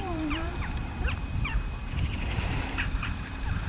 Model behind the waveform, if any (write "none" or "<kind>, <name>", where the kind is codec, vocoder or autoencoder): vocoder, BigVGAN v2